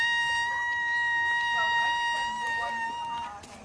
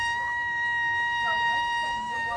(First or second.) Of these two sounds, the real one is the first